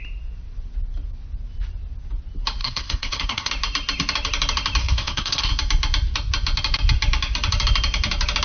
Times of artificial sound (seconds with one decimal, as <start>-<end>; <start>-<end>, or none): 2.6-3.5; 4.8-5.5